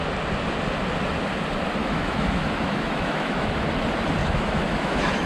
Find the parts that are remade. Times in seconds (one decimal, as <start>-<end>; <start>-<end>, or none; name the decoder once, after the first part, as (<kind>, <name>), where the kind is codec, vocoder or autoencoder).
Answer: 1.8-3.5 (autoencoder, DAC-VAE); 4.2-5.3